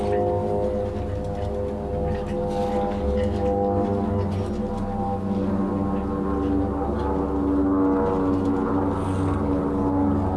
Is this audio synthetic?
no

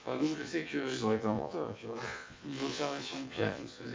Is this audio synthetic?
yes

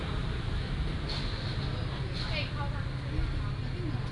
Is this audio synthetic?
no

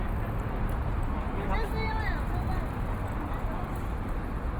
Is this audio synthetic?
no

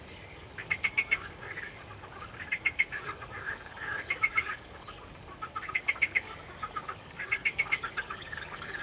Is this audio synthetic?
yes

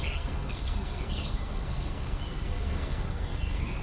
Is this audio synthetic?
yes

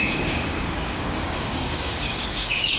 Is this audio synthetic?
yes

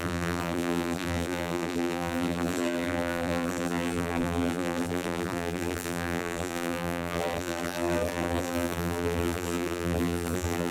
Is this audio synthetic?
yes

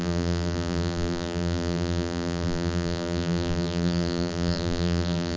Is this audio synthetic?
yes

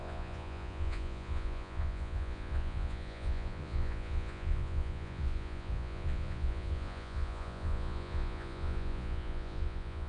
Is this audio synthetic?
yes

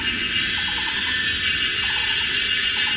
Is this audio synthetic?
no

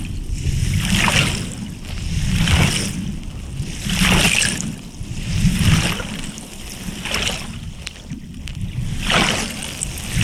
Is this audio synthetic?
no